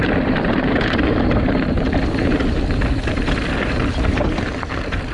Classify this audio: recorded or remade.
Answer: remade